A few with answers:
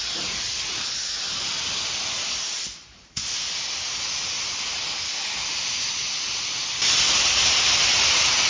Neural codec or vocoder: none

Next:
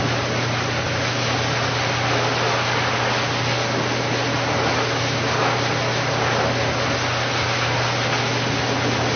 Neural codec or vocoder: none